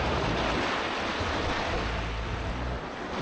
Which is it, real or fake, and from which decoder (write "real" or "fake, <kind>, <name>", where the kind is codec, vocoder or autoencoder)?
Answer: real